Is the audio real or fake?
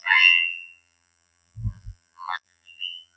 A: fake